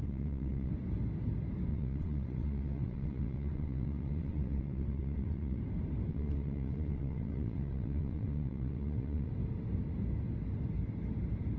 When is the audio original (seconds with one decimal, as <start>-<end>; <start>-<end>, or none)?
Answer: 0.7-1.7; 5.6-6.1; 9.3-11.6